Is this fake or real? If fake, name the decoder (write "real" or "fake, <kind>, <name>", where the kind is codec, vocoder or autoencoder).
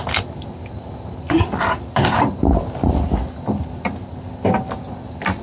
real